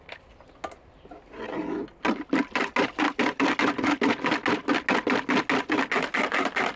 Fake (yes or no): no